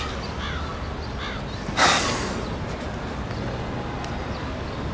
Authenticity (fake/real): real